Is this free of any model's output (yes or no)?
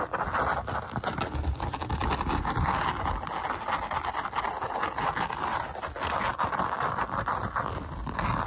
yes